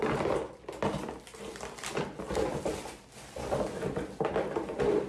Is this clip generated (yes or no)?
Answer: no